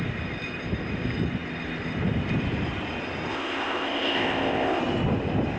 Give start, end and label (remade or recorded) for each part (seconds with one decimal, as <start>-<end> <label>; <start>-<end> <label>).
0.0-3.3 recorded; 3.3-4.8 remade; 4.8-5.6 recorded